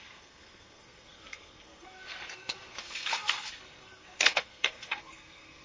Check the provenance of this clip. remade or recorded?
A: remade